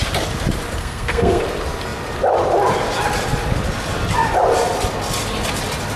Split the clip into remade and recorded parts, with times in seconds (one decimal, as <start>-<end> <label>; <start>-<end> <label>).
0.0-0.8 recorded; 0.8-1.4 remade; 1.4-6.0 recorded